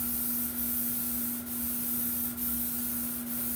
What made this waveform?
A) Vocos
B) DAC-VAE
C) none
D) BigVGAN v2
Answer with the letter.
C